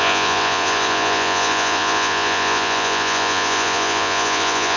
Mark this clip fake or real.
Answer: fake